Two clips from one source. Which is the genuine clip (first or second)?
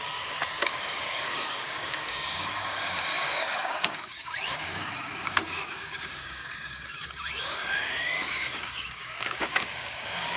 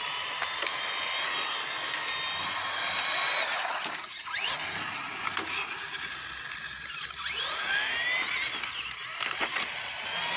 second